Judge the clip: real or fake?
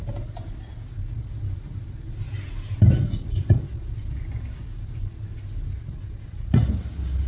real